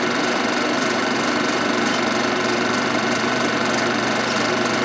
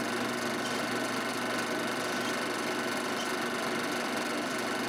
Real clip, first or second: second